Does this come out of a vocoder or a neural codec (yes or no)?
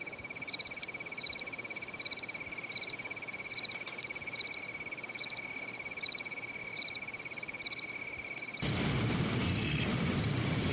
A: yes